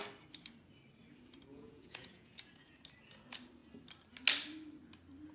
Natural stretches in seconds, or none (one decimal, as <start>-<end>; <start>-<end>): 0.0-1.5; 2.8-5.3